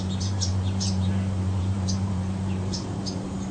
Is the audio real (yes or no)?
no